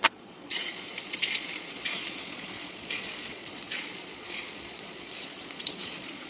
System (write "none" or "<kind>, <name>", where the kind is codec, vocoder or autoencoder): vocoder, Vocos